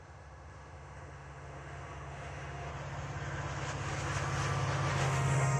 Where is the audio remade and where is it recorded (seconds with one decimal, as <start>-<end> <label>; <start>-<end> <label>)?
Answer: 0.0-2.7 remade; 2.7-4.9 recorded; 4.9-5.6 remade